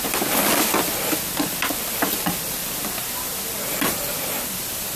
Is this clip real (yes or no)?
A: yes